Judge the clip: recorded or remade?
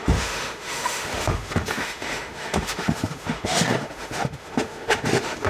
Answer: remade